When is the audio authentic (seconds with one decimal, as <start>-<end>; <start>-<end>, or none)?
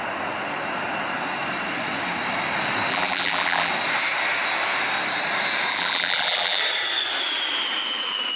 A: 0.0-2.9; 3.7-5.7; 6.6-8.4